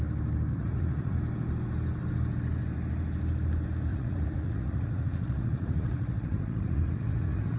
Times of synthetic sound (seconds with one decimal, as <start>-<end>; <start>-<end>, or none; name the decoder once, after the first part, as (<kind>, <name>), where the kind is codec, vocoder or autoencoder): 0.5-1.2 (vocoder, Vocos); 3.9-7.6

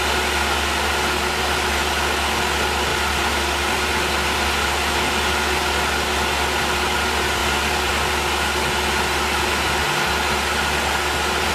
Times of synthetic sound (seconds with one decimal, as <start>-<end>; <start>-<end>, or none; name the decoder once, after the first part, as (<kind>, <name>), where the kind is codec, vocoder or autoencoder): none

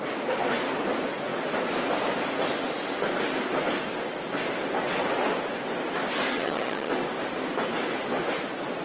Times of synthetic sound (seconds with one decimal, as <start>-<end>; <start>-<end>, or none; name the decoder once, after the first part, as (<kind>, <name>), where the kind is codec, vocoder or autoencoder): 6.3-6.9 (vocoder, HiFi-GAN)

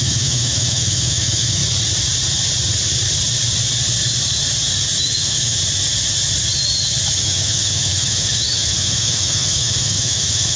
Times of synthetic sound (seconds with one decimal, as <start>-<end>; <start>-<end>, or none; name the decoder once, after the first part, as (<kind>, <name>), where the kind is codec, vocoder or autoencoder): 0.0-1.6 (autoencoder, DAC-VAE); 5.0-5.6; 7.2-10.6

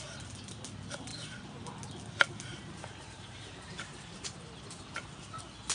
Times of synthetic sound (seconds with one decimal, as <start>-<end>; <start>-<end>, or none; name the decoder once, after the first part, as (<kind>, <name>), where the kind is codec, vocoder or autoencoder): 1.1-1.6 (vocoder, BigVGAN v2); 2.5-4.8